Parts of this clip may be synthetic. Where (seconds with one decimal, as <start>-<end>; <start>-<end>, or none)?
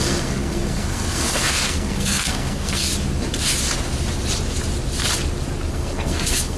0.0-2.9; 5.7-6.6